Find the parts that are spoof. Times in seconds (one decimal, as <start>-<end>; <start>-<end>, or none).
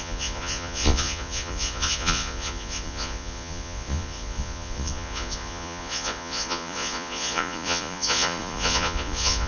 0.0-9.5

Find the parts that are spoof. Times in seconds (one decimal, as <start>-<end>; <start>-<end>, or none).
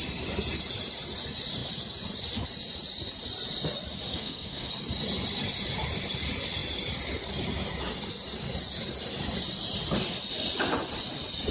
4.1-4.7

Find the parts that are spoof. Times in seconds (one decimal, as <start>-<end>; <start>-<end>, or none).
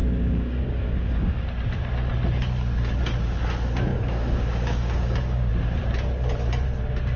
0.0-1.4; 3.9-5.5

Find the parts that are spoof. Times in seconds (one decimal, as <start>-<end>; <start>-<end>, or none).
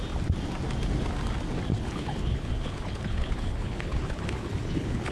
1.7-5.1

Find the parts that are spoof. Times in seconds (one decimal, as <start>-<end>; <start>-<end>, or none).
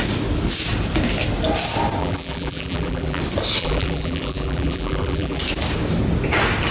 2.0-3.2; 3.6-5.4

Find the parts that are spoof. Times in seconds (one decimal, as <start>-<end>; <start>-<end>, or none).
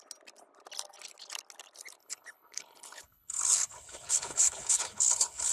2.0-5.5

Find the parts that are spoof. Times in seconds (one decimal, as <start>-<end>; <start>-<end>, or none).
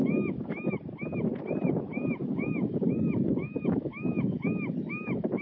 0.0-0.8; 2.2-5.4